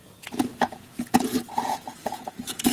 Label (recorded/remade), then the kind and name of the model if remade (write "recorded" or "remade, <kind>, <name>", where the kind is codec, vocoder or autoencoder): remade, vocoder, Vocos